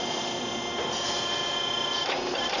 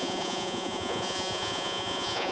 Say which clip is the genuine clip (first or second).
first